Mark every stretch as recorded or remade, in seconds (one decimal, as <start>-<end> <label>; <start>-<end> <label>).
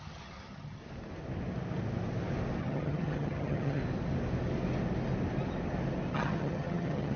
0.0-0.8 remade; 0.8-2.6 recorded; 2.6-3.8 remade; 3.8-6.1 recorded; 6.1-7.2 remade